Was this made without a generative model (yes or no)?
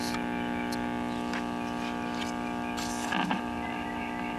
yes